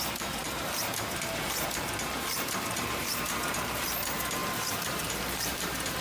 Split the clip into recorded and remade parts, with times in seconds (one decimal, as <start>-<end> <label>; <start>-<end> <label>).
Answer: 0.0-6.0 remade